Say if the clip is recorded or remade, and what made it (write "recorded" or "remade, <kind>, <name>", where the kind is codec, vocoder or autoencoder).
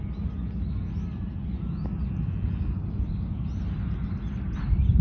recorded